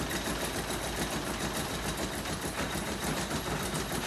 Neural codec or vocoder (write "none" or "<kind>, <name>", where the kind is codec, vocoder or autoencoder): none